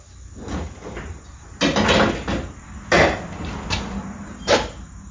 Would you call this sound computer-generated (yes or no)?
no